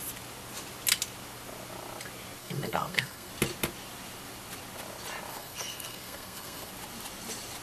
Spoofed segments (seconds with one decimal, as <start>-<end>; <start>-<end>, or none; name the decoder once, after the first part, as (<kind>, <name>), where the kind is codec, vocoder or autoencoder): 2.4-3.3 (codec, SNAC); 5.3-6.7